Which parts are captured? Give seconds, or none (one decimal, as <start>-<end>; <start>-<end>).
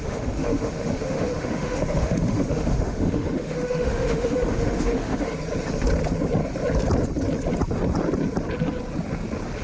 5.3-9.6